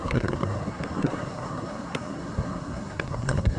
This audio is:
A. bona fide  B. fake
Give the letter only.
B